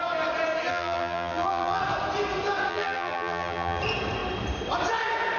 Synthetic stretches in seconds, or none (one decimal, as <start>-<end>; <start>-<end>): 0.7-1.8; 2.7-3.8